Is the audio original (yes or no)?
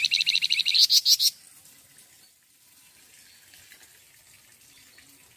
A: yes